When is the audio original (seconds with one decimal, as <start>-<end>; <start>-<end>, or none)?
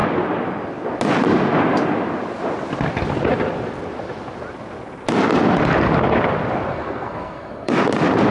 0.0-6.7; 7.7-8.3